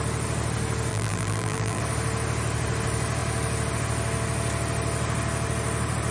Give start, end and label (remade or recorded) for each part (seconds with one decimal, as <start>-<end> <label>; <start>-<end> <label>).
0.0-0.9 recorded; 0.9-1.8 remade; 1.8-6.1 recorded